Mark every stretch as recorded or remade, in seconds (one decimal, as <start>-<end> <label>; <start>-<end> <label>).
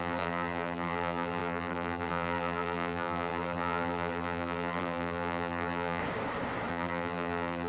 0.0-6.0 remade; 6.0-6.7 recorded; 6.7-7.7 remade